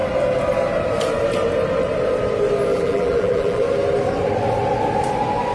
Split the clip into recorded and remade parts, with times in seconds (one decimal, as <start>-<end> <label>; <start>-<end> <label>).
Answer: 0.0-2.7 recorded; 2.7-3.6 remade; 3.6-5.5 recorded